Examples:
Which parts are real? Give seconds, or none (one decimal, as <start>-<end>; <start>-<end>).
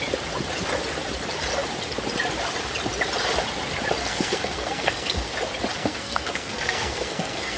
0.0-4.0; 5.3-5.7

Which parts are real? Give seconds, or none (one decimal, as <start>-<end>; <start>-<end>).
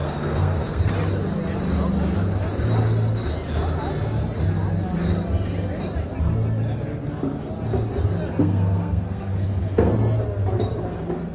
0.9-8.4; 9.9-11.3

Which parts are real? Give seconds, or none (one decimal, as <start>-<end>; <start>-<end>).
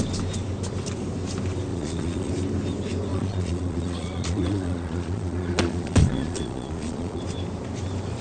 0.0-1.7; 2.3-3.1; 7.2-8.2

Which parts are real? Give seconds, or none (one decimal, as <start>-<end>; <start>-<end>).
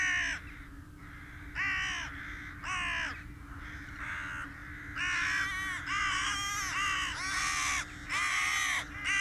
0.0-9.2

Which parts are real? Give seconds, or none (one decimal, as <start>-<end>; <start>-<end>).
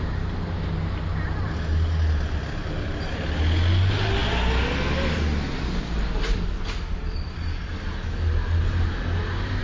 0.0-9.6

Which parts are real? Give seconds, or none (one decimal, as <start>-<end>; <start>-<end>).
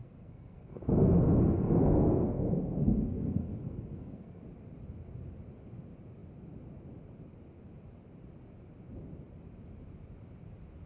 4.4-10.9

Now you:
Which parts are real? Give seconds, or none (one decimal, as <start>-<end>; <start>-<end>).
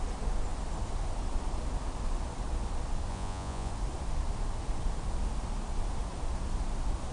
0.0-3.1; 3.7-7.1